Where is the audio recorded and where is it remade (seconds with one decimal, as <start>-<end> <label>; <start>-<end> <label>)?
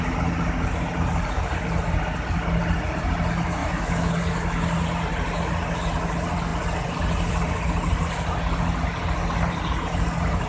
0.0-3.6 recorded; 3.6-4.1 remade; 4.1-10.5 recorded